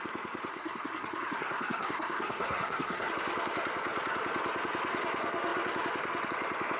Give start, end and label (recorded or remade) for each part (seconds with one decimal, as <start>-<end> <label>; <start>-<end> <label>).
0.0-0.5 recorded; 0.5-3.1 remade; 3.1-6.8 recorded